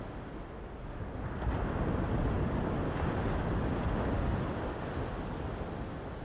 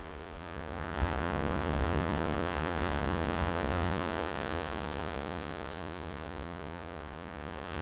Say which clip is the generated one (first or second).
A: second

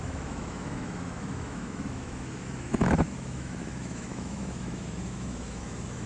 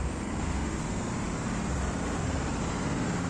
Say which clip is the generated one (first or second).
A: first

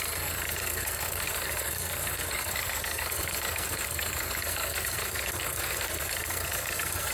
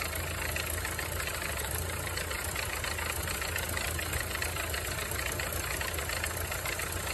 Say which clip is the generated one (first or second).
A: first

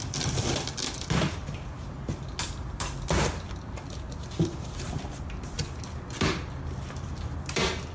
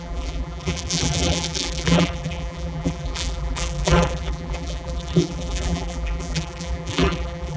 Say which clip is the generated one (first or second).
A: second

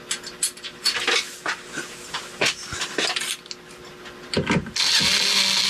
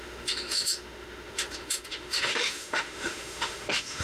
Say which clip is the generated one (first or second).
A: second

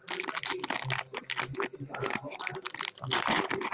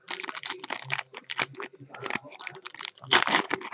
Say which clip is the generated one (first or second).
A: second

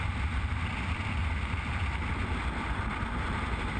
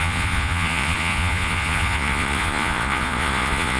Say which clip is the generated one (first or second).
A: second